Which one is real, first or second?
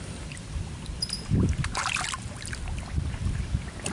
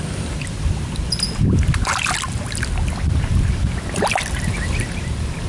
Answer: second